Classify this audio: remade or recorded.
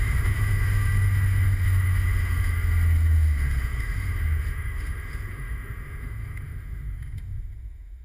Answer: remade